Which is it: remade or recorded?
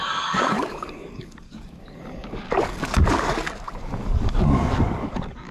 remade